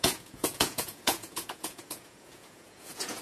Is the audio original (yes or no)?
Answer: no